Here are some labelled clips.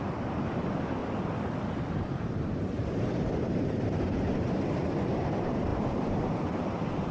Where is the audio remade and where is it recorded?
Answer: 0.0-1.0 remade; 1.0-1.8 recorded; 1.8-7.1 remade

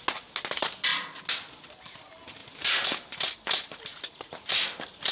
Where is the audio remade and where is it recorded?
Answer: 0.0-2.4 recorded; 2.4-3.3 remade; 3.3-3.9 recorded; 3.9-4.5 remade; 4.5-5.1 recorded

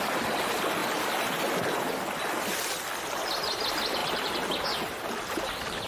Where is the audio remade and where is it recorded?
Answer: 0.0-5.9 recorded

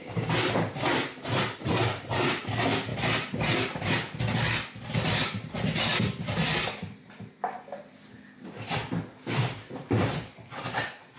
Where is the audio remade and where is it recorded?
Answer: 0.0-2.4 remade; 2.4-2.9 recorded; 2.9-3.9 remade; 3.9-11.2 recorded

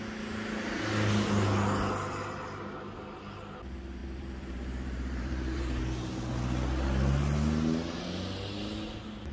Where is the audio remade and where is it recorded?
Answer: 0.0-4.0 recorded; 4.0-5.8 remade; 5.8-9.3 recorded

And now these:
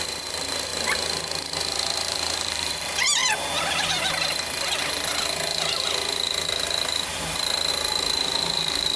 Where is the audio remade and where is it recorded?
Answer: 0.0-0.7 remade; 0.7-1.6 recorded; 1.6-3.2 remade; 3.2-7.7 recorded; 7.7-9.0 remade

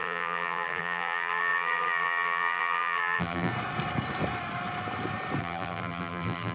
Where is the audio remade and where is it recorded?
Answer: 0.0-3.5 remade; 3.5-5.4 recorded; 5.4-6.5 remade

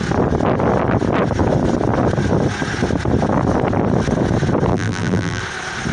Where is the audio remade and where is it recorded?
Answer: 0.0-4.7 recorded; 4.7-5.4 remade; 5.4-5.9 recorded